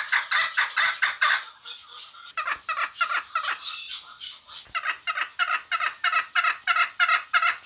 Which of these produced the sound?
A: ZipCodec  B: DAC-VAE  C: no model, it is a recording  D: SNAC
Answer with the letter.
C